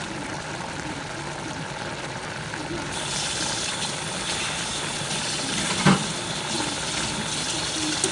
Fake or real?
fake